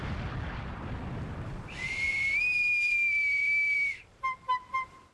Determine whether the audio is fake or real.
fake